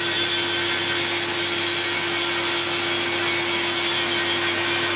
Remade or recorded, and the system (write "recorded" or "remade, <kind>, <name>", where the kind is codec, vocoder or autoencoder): recorded